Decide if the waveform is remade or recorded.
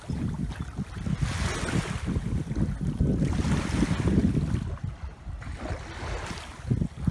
recorded